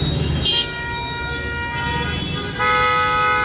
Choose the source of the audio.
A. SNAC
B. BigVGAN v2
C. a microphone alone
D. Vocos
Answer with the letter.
C